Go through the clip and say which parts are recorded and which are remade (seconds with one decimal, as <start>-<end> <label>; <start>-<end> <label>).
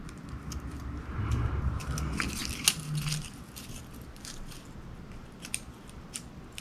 0.0-6.6 recorded